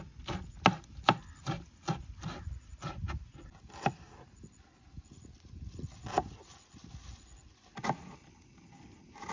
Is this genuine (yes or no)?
yes